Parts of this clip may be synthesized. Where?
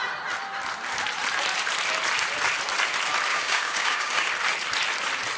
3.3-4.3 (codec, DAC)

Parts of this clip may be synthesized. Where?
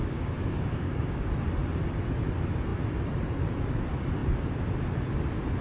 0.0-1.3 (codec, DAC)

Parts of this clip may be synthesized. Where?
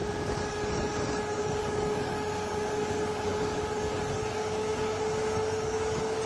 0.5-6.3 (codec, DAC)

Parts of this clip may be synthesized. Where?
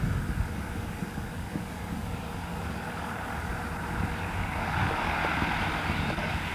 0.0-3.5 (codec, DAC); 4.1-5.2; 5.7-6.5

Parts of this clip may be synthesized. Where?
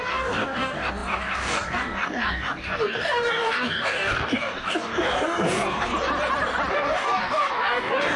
0.0-5.9 (codec, DAC); 6.7-8.2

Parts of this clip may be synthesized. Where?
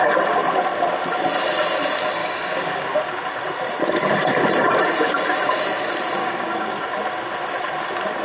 2.2-3.2 (codec, DAC); 6.2-6.7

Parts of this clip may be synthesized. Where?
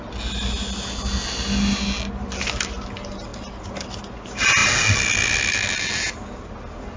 none